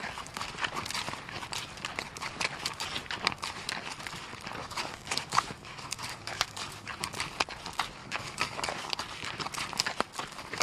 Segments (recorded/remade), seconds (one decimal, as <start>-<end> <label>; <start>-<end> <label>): 0.0-4.6 recorded; 4.6-6.9 remade; 6.9-8.0 recorded; 8.0-9.0 remade; 9.0-10.6 recorded